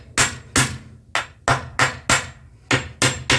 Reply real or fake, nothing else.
real